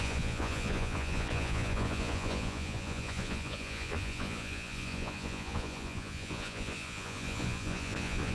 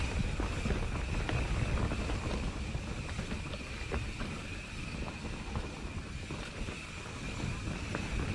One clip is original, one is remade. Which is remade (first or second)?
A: first